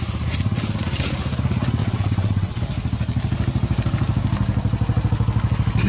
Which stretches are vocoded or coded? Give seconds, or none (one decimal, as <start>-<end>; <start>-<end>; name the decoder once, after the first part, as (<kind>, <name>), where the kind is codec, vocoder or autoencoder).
1.8-2.6 (vocoder, WaveNeXt)